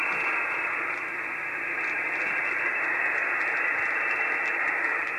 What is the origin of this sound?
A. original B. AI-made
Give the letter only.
B